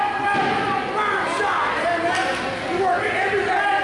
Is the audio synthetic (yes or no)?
no